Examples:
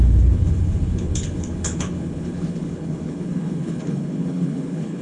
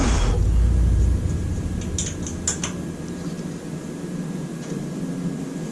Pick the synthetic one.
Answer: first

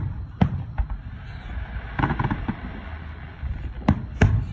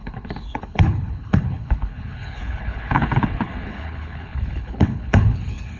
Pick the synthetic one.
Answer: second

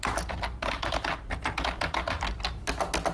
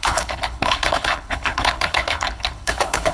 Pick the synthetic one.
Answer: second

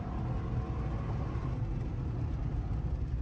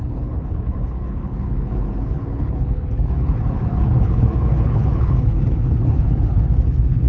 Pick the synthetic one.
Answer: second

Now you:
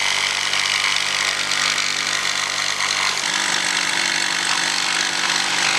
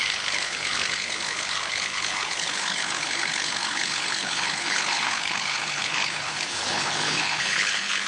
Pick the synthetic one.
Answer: second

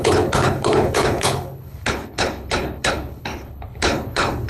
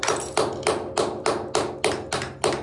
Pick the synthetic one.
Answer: first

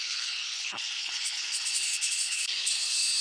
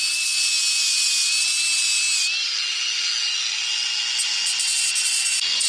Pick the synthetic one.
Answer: first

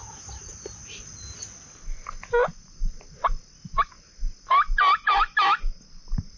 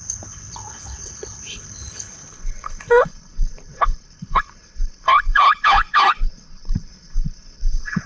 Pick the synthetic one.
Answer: second